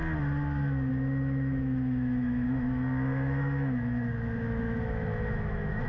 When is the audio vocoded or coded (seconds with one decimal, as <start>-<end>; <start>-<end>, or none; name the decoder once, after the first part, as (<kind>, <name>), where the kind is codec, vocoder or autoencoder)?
0.9-5.9 (autoencoder, DAC-VAE)